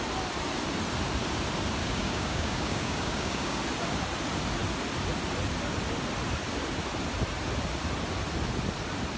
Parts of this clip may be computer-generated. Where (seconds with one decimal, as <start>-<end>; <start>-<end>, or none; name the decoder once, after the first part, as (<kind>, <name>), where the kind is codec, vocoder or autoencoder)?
1.8-3.6 (codec, DAC)